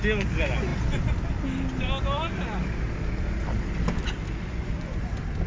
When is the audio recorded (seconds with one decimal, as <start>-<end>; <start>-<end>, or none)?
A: 0.0-4.5; 5.1-5.5